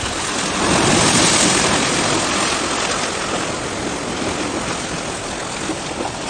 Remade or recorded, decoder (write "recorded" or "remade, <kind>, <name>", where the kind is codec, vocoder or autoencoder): recorded